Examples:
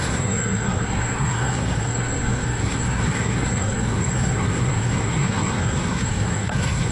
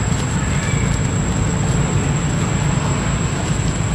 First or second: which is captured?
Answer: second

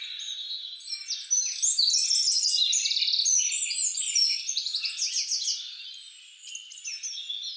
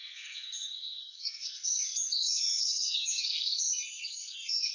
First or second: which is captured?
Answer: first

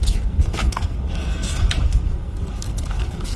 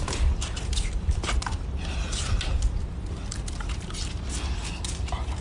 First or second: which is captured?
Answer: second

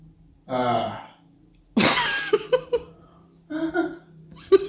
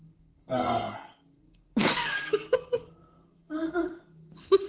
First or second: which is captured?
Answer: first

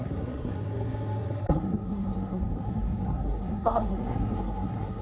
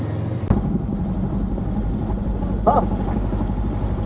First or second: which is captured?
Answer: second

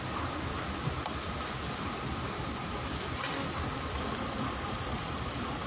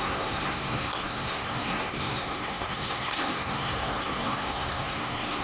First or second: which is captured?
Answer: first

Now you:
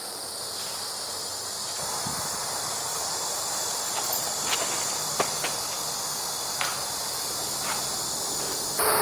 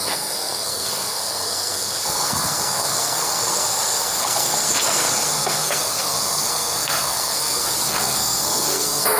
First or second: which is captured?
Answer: first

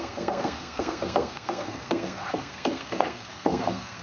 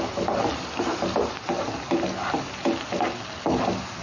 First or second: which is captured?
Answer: second